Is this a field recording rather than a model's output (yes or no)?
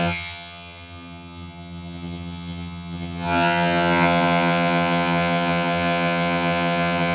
no